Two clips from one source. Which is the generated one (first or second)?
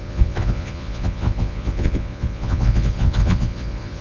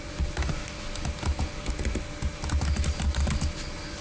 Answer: first